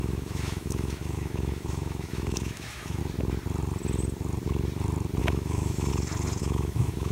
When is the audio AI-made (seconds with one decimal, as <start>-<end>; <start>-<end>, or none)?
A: 0.0-3.0; 5.2-5.9; 6.4-7.1